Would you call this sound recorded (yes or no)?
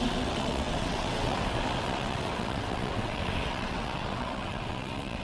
no